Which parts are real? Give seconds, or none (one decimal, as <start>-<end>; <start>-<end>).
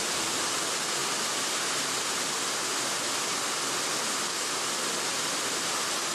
0.0-6.1